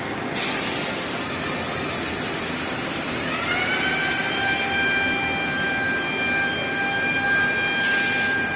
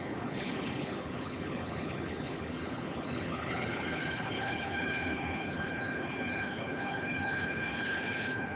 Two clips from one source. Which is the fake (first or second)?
second